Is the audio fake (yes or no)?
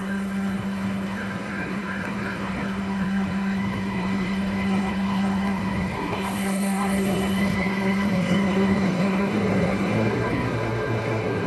yes